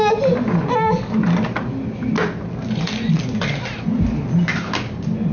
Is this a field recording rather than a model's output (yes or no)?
yes